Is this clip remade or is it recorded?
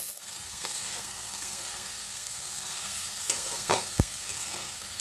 remade